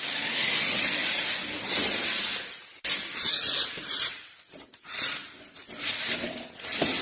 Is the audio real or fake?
real